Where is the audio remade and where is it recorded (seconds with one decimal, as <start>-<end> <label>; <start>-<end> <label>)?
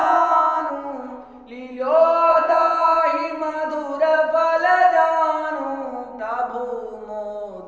0.0-0.7 remade; 0.7-2.3 recorded; 2.3-3.0 remade; 3.0-7.7 recorded